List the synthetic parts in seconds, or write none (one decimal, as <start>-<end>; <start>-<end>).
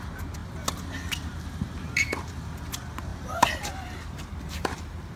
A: 3.1-4.8